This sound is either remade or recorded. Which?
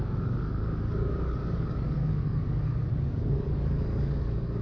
remade